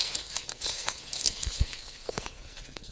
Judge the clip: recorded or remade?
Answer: remade